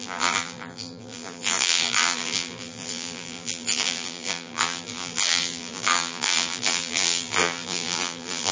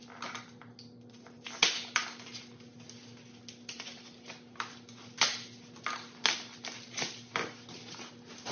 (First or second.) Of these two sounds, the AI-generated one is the first